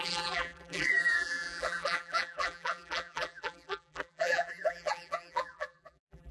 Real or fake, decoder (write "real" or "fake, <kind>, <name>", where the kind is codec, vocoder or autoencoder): fake, vocoder, BigVGAN v2